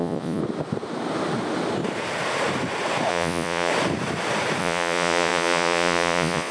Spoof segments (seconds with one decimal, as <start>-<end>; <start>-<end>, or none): 0.0-0.4; 3.1-3.7; 4.6-6.5